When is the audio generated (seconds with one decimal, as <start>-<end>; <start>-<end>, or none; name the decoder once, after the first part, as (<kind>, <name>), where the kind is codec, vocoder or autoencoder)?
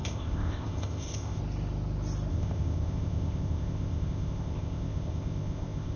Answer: 0.0-1.4 (codec, ZipCodec); 2.3-6.0